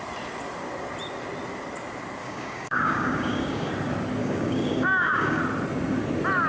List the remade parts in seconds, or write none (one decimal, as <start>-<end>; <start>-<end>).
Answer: 2.2-3.7; 4.2-5.4